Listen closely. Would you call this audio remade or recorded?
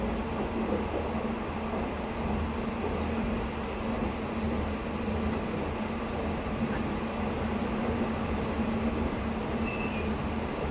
recorded